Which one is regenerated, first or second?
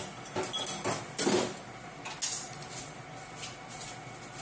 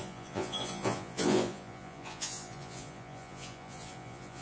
second